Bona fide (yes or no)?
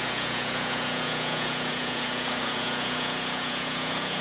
no